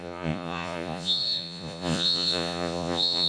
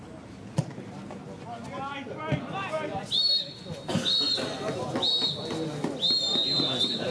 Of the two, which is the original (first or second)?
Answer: second